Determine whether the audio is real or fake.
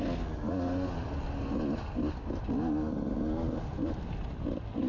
real